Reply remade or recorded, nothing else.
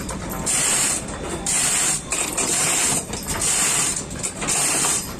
recorded